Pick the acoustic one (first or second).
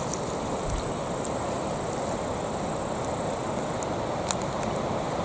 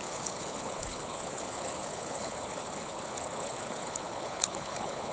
first